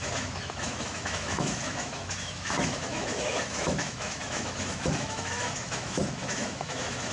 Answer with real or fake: fake